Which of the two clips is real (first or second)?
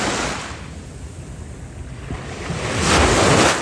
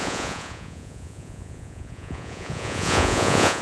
first